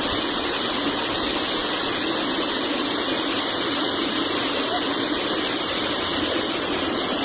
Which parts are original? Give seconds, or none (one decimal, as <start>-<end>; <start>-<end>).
0.0-7.2